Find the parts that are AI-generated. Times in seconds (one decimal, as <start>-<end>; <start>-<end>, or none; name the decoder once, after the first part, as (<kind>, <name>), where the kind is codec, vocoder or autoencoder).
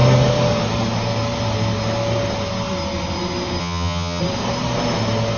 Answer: 3.6-4.2 (vocoder, HiFi-GAN)